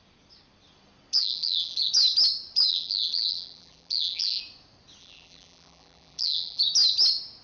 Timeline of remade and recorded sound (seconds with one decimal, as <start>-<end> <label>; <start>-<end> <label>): 0.0-1.2 recorded; 1.2-1.9 remade; 1.9-2.7 recorded; 2.7-4.4 remade; 4.4-5.0 recorded; 5.0-6.6 remade; 6.6-7.4 recorded